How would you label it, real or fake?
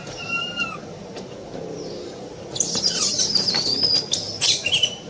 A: fake